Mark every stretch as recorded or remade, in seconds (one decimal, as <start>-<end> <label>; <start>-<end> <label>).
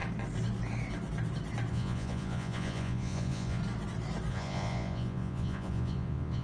0.0-1.7 recorded; 1.7-3.6 remade; 3.6-4.3 recorded; 4.3-6.4 remade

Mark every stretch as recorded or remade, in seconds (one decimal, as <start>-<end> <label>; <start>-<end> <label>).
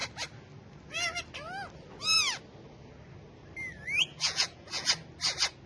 0.0-4.1 recorded; 4.1-4.9 remade; 4.9-5.7 recorded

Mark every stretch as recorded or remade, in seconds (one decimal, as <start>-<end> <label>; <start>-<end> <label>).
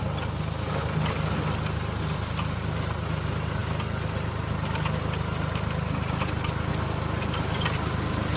0.0-8.4 recorded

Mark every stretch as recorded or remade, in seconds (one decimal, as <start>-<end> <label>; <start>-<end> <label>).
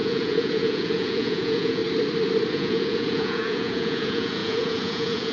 0.0-1.8 remade; 1.8-2.5 recorded; 2.5-5.3 remade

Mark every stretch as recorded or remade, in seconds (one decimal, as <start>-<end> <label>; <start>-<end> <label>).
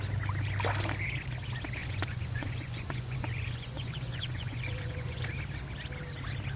0.0-1.8 recorded; 1.8-5.3 remade; 5.3-6.6 recorded